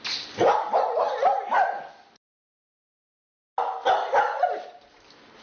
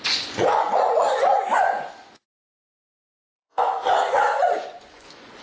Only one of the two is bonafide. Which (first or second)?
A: first